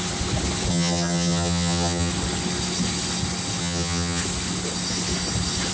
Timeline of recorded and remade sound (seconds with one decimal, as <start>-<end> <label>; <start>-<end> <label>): 0.0-0.7 recorded; 0.7-2.1 remade; 2.1-3.6 recorded; 3.6-4.2 remade; 4.2-5.7 recorded